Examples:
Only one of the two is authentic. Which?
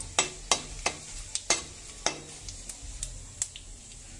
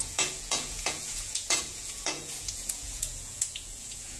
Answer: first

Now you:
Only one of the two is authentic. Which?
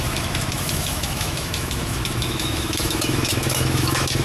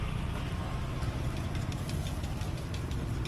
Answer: second